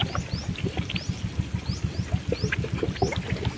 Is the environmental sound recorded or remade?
recorded